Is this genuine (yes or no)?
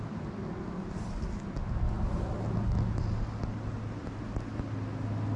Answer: yes